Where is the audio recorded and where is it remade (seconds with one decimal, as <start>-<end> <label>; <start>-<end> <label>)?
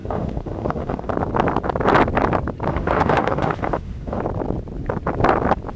0.0-1.1 remade; 1.1-2.7 recorded; 2.7-4.2 remade; 4.2-5.8 recorded